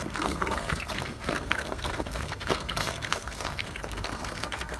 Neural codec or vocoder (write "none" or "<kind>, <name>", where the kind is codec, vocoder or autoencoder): codec, SNAC